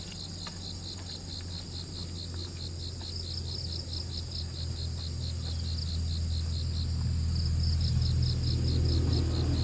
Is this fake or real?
real